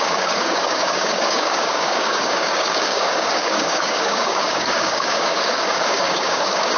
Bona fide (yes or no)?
no